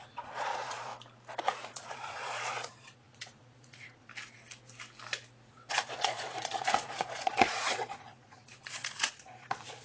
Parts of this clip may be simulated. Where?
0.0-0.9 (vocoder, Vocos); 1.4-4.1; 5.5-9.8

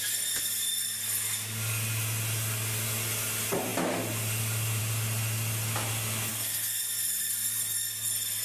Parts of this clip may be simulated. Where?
6.3-6.8 (codec, SNAC)

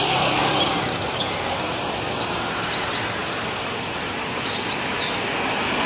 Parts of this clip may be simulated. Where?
0.4-2.4 (vocoder, BigVGAN v2); 3.2-5.1